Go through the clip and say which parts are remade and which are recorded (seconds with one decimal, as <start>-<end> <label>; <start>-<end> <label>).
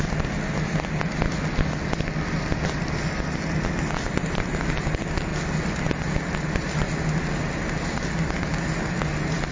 0.0-9.5 recorded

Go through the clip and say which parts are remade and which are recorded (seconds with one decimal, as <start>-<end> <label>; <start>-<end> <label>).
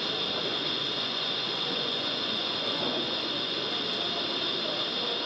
0.0-0.5 recorded; 0.5-3.7 remade; 3.7-5.3 recorded